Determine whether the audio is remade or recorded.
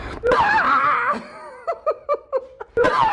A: remade